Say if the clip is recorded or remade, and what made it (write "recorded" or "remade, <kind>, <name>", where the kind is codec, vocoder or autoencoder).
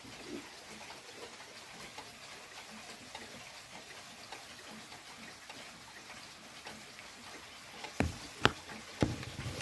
recorded